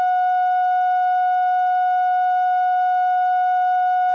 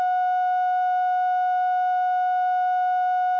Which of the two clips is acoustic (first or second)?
second